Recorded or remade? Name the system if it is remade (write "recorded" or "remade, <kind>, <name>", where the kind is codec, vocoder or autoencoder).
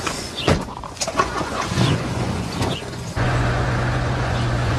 remade, vocoder, Vocos